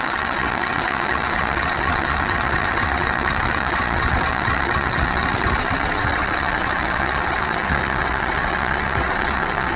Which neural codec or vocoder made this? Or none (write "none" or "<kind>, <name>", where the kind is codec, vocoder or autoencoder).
vocoder, WaveNeXt